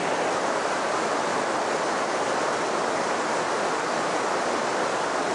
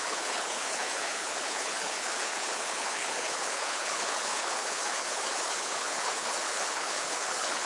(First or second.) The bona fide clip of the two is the first